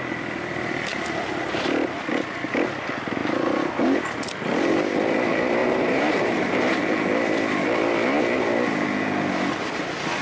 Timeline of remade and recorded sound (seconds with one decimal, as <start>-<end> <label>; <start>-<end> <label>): 0.0-5.6 recorded; 5.6-6.8 remade; 6.8-10.2 recorded